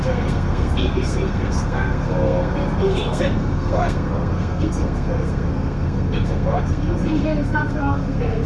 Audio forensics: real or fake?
fake